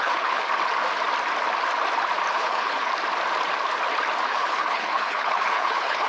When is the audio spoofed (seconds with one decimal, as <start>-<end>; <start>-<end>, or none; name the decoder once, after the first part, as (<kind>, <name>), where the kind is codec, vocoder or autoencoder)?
0.0-0.4 (codec, HILCodec); 2.3-2.9; 4.3-6.1